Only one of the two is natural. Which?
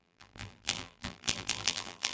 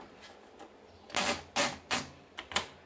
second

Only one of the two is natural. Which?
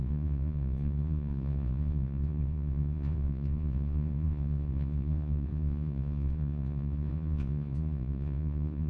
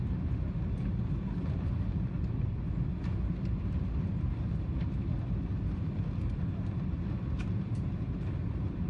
second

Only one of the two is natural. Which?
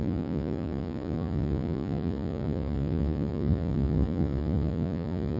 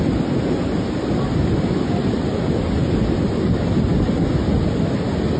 second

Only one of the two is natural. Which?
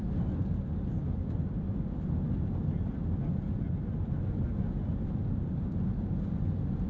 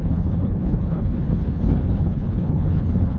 first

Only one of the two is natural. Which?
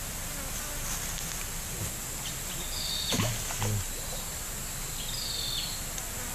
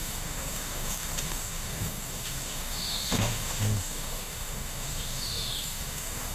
first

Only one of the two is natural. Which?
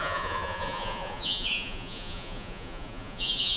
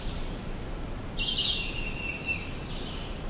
second